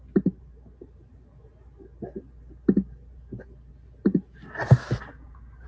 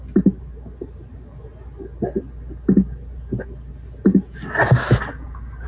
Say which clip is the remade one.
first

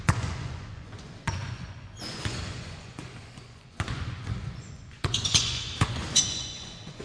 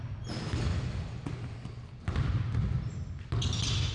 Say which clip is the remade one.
first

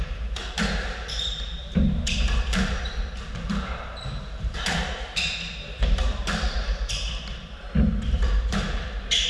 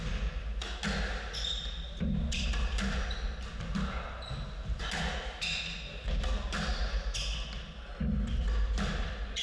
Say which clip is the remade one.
first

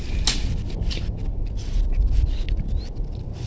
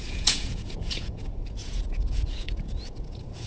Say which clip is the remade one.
second